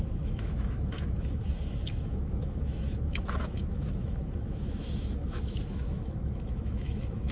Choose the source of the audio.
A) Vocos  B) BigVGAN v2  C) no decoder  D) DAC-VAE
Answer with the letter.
D